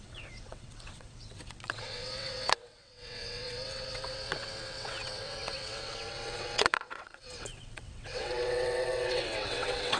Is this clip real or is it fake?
fake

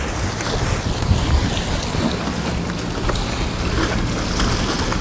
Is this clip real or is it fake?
real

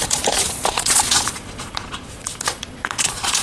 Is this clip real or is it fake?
fake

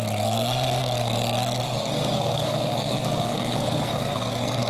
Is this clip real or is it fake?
fake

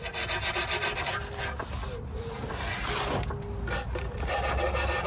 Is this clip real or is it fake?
real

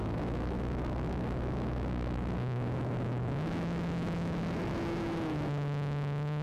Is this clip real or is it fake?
fake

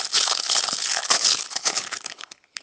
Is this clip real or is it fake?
fake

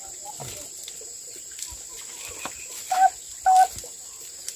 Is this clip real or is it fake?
real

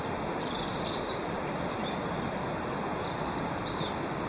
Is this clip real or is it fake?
real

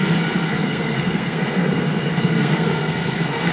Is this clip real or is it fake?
fake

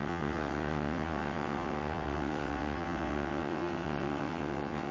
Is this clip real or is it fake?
fake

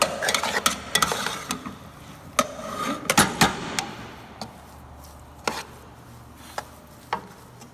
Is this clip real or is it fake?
real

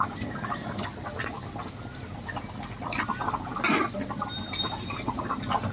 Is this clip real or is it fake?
real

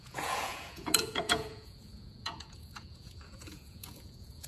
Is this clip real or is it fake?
fake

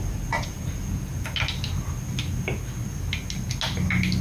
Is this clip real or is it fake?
real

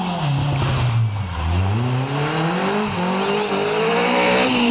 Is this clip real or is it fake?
real